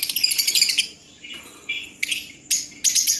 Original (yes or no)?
yes